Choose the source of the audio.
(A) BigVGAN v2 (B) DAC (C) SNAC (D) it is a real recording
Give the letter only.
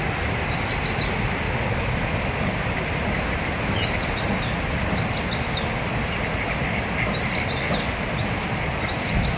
A